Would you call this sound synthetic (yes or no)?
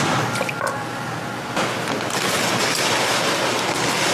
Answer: no